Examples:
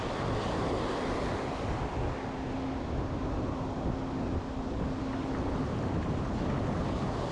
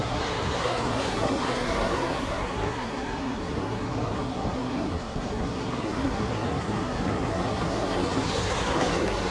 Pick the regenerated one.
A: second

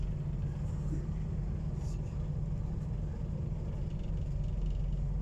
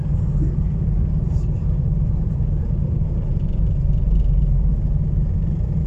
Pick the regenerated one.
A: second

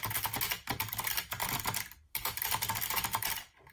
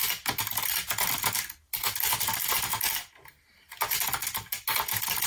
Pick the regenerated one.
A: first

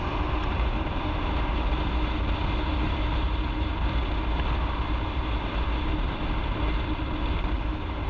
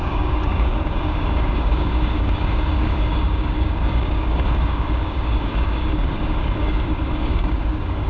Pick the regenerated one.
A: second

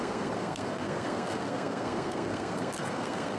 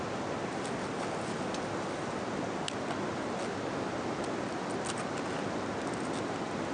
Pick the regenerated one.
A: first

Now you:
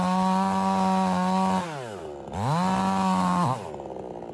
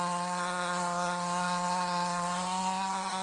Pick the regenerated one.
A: second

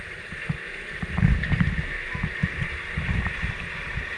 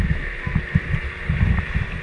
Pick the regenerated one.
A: first